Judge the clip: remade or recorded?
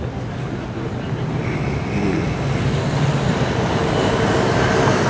recorded